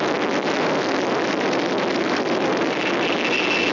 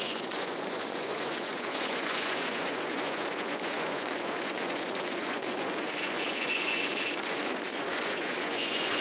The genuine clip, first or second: first